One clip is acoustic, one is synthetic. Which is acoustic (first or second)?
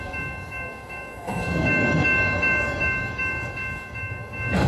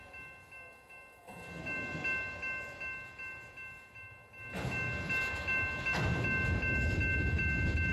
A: second